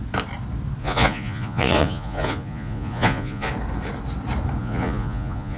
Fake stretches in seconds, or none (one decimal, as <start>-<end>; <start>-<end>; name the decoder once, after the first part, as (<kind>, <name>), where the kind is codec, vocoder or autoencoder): 0.8-3.5 (vocoder, Vocos); 4.6-5.6